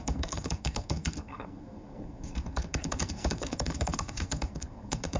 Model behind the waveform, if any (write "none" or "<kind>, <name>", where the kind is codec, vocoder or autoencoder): codec, SNAC